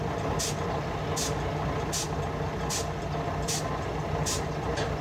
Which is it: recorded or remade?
recorded